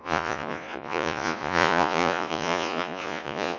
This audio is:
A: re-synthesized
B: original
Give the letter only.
A